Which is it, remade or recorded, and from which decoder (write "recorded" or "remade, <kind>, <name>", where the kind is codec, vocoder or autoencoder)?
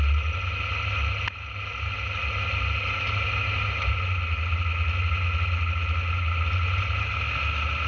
recorded